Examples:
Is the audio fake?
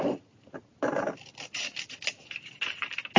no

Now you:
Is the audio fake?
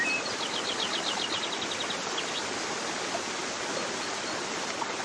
no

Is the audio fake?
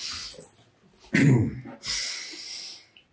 no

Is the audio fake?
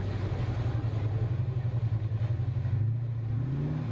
no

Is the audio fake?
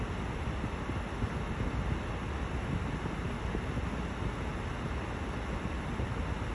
no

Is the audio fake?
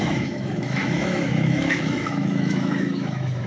yes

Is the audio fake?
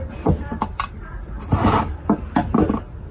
yes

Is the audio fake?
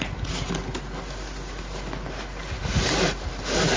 no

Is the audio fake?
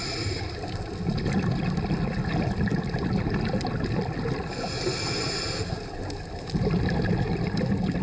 no